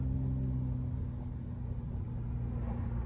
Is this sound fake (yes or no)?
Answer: no